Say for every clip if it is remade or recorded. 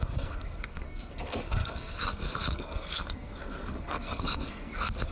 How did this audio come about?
remade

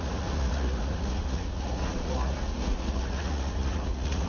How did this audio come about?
remade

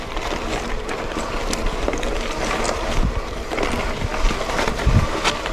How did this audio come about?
recorded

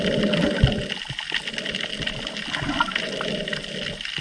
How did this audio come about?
recorded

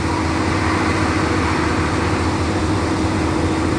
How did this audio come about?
recorded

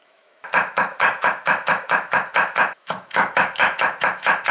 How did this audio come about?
remade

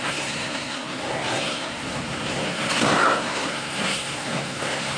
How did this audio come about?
remade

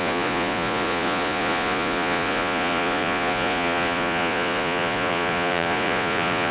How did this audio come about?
remade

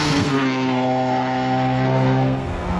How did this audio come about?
remade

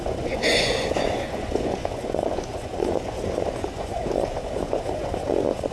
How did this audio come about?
remade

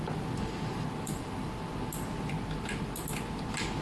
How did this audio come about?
recorded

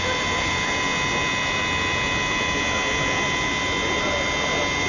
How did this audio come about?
recorded